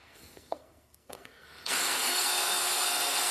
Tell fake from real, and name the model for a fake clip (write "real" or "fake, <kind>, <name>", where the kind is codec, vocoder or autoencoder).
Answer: fake, codec, SNAC